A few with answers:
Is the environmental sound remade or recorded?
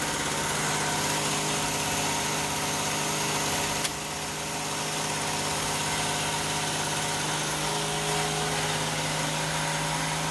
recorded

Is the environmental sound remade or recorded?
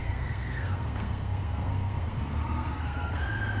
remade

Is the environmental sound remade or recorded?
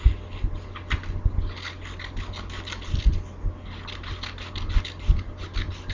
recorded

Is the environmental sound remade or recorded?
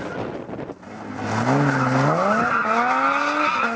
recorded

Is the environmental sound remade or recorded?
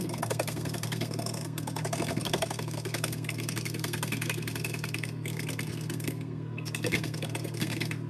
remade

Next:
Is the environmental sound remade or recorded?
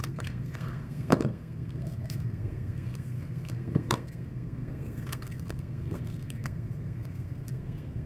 remade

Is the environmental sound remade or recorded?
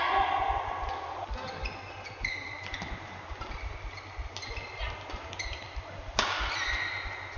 recorded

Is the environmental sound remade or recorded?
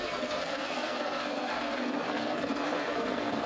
remade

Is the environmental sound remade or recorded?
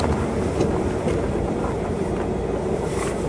recorded